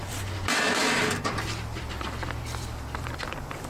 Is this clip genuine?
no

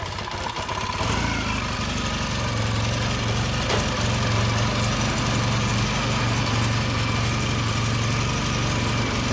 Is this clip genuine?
yes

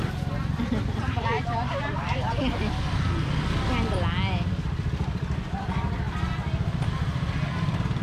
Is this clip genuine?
no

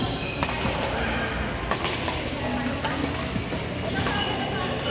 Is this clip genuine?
yes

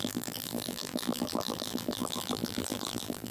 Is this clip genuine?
no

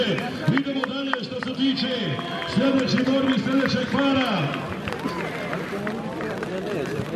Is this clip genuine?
yes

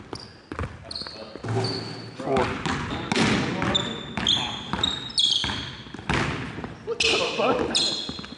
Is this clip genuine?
yes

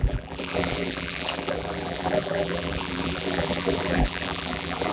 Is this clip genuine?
no